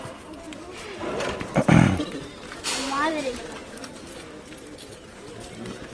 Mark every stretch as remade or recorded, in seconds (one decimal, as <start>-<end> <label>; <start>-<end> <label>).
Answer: 0.0-5.9 recorded